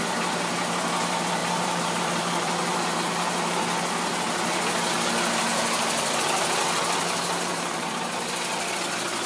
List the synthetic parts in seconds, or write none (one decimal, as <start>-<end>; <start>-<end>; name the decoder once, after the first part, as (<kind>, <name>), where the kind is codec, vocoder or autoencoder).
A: 1.4-3.9 (vocoder, BigVGAN v2); 7.5-8.0